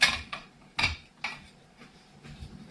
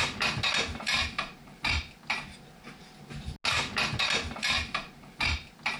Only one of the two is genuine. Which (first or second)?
second